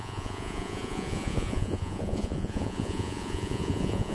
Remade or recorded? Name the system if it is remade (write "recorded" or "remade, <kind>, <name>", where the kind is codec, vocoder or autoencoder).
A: remade, vocoder, Vocos